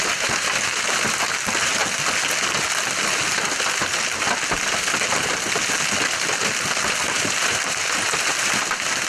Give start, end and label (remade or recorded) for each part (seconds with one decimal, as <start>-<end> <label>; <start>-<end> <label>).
0.0-1.8 remade; 1.8-7.0 recorded; 7.0-9.1 remade